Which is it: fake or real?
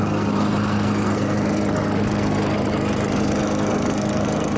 fake